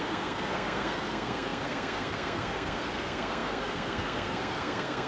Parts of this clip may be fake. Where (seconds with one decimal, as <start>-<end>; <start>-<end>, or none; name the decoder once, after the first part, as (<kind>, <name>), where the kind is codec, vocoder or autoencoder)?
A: 0.0-5.1 (codec, SNAC)